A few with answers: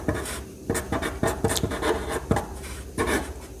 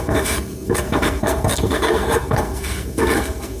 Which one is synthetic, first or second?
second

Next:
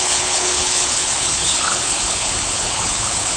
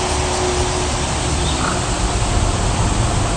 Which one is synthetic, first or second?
first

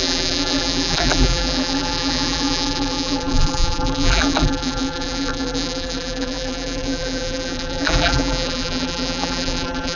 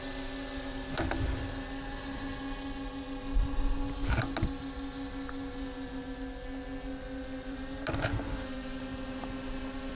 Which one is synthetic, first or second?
first